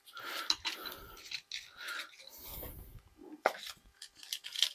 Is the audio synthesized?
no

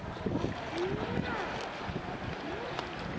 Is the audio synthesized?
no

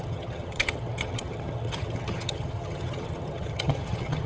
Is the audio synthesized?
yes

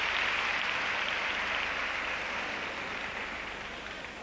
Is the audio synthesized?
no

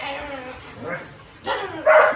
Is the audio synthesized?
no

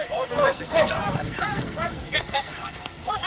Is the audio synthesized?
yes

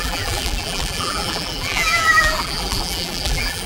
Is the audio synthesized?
yes